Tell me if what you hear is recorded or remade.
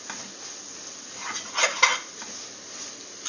recorded